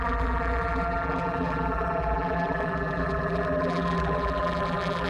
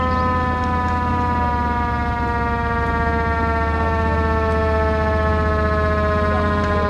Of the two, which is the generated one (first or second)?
first